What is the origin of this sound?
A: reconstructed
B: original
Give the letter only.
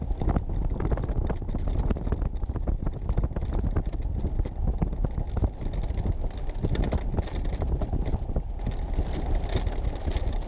B